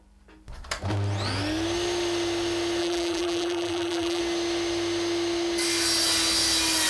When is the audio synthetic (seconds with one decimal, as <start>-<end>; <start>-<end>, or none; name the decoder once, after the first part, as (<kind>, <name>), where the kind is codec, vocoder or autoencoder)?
2.8-4.2 (vocoder, BigVGAN v2)